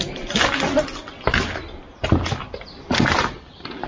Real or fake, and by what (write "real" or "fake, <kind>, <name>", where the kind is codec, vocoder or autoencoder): real